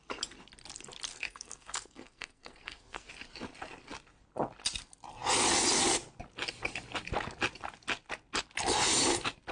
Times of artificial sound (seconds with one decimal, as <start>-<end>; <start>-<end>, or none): 1.1-3.1